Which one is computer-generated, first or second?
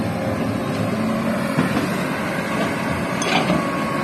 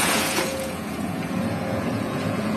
second